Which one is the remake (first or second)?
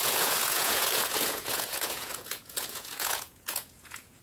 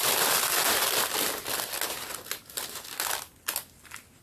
first